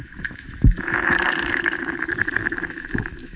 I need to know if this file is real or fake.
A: fake